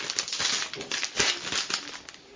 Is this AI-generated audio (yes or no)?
no